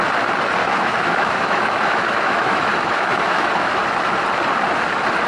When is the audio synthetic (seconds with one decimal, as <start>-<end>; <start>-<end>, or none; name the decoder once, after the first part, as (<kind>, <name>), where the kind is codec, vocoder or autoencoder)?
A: 0.6-3.8 (autoencoder, DAC-VAE)